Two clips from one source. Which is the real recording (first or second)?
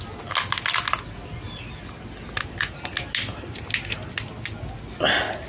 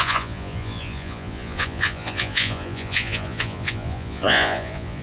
first